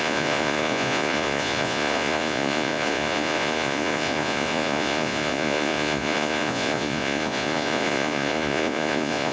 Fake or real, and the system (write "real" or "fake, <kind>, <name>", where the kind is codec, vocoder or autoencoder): fake, vocoder, Vocos